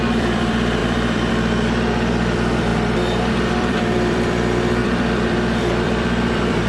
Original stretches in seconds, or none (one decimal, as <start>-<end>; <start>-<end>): 2.7-3.3

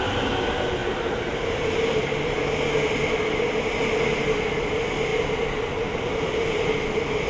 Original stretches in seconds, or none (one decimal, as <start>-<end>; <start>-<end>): 0.0-0.8; 2.4-7.3